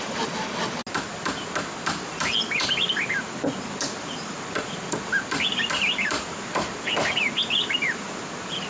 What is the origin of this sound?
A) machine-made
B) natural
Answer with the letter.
B